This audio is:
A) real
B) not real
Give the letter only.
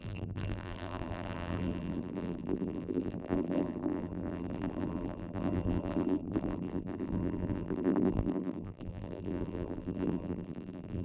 B